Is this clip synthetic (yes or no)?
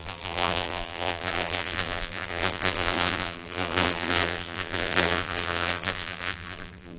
yes